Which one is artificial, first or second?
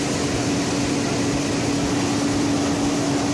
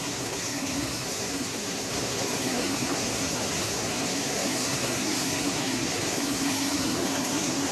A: second